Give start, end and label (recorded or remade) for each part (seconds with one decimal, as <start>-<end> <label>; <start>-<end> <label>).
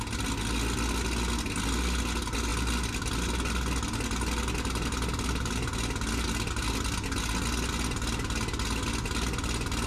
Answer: 0.0-9.9 recorded